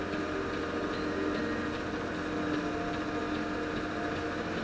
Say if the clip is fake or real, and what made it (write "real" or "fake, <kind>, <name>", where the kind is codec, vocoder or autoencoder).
real